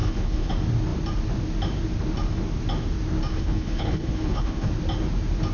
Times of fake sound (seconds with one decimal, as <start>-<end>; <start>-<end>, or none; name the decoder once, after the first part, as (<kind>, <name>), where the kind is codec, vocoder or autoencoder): 0.0-0.5 (codec, HILCodec); 3.3-4.7